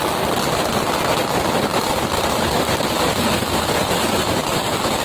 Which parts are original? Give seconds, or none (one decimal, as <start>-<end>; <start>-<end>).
0.0-5.0